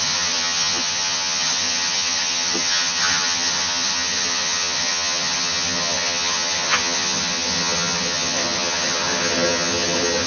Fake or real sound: fake